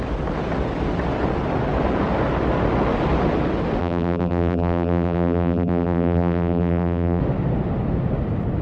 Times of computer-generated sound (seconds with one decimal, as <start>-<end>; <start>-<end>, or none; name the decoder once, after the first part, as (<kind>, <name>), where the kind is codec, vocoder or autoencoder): 3.8-7.2 (vocoder, BigVGAN v2)